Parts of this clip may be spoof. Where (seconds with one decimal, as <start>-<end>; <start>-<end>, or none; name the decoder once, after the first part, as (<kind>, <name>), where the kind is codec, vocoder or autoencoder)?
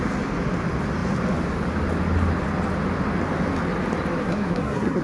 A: 4.2-5.0 (codec, SNAC)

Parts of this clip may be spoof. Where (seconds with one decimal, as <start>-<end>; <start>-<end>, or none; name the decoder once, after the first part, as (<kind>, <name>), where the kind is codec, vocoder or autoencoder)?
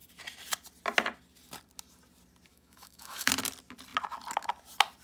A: 2.5-3.3 (autoencoder, DAC-VAE)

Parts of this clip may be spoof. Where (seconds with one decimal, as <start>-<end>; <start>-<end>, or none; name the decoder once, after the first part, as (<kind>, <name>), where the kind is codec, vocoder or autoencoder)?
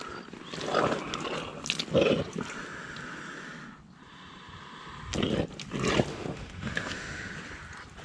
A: 6.1-7.3 (autoencoder, DAC-VAE)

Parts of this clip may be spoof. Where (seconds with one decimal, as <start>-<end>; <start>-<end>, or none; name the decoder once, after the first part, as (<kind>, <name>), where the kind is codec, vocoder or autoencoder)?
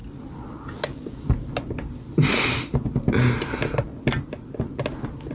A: none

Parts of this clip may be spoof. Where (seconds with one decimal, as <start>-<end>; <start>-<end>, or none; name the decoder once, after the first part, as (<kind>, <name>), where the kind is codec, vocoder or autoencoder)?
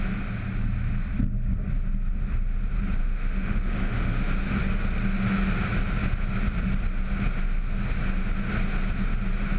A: 3.0-4.3 (autoencoder, DAC-VAE)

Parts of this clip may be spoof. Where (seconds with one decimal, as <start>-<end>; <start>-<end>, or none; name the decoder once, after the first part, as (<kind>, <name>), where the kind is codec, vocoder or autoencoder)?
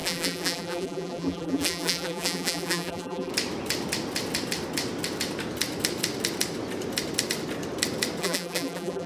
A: 0.0-3.3 (vocoder, BigVGAN v2); 8.2-9.1